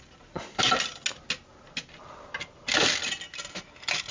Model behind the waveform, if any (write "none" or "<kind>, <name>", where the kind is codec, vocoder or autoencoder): none